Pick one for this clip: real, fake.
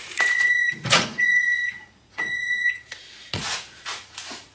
fake